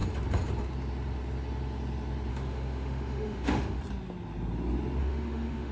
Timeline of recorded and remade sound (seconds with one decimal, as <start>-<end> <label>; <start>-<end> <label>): 0.0-2.3 recorded; 2.3-3.8 remade; 3.8-5.0 recorded; 5.0-5.7 remade